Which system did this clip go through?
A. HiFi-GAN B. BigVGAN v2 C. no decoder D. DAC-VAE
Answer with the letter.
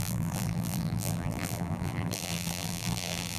B